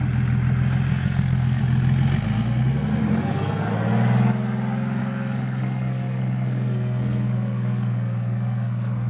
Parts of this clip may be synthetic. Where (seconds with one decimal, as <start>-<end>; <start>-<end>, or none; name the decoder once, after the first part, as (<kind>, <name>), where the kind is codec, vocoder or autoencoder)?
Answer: 0.9-1.6 (codec, SNAC); 3.1-3.7; 5.0-9.1